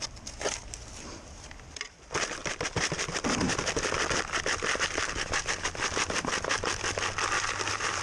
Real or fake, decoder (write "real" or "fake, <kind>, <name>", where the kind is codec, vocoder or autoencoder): fake, vocoder, BigVGAN v2